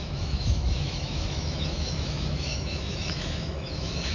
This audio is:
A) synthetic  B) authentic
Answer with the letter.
A